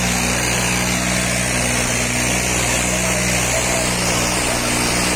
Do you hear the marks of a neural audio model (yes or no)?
no